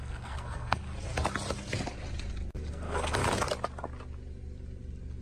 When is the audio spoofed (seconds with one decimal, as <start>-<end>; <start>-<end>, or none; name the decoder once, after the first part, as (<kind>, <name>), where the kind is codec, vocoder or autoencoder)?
0.0-0.8 (codec, SNAC); 2.7-3.2